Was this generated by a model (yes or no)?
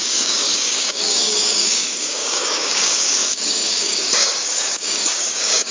yes